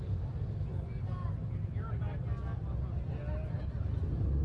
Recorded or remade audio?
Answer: recorded